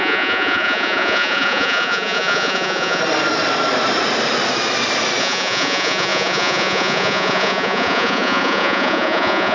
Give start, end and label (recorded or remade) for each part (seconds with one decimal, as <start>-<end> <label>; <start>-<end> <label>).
0.0-3.0 remade; 3.0-5.2 recorded; 5.2-9.5 remade